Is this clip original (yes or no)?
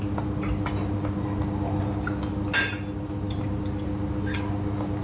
yes